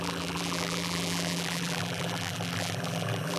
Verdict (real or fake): fake